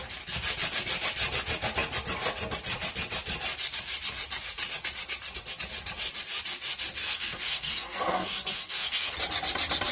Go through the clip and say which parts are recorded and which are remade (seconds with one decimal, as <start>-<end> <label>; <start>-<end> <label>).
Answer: 0.0-7.0 recorded; 7.0-9.2 remade; 9.2-9.9 recorded